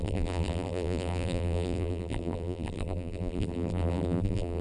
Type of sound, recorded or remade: remade